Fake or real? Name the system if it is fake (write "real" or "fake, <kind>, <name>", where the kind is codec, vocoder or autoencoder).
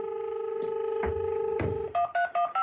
real